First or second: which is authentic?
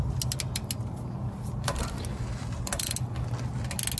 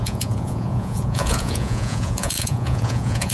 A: first